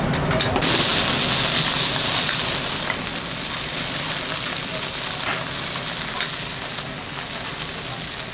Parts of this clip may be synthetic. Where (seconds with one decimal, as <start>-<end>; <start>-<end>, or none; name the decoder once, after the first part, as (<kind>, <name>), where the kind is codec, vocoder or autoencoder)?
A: none